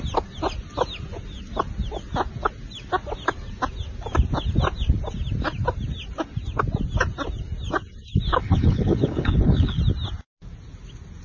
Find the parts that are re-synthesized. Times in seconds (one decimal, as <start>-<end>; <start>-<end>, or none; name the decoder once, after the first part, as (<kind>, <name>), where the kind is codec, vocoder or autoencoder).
8.3-9.8 (codec, HILCodec)